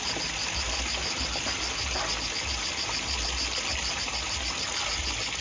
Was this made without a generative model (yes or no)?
yes